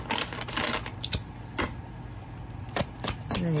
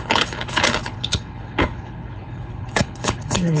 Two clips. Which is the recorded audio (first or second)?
first